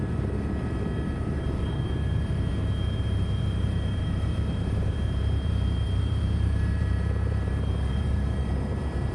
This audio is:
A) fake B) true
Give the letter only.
A